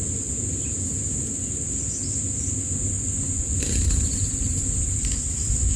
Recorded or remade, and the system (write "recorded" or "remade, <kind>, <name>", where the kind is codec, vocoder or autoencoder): recorded